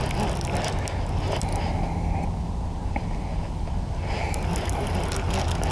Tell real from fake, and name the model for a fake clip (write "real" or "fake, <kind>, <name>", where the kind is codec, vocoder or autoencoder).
real